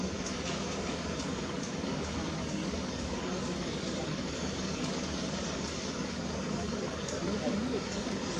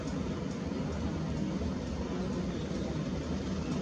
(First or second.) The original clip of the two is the second